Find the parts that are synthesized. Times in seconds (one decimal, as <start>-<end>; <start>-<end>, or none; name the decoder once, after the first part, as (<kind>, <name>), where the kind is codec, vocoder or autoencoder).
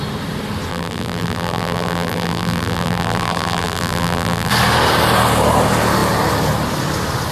0.7-4.5 (vocoder, BigVGAN v2)